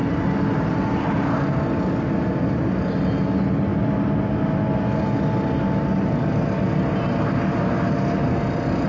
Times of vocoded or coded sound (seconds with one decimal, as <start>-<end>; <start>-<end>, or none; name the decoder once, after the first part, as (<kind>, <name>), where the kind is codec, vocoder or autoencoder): none